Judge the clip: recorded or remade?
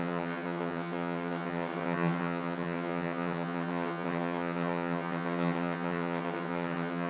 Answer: remade